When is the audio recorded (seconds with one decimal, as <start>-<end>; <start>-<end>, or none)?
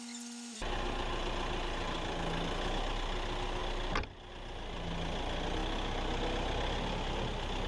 0.0-7.7